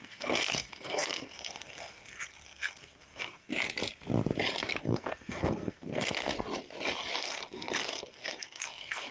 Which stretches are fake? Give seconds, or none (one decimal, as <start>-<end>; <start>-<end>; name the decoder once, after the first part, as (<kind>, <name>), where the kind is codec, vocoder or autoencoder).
0.0-3.5 (codec, SNAC); 4.8-6.3; 7.2-9.1